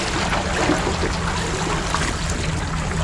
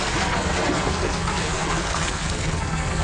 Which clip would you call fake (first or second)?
second